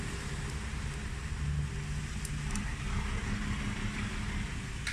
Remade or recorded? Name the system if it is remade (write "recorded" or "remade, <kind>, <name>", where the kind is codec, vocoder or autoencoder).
recorded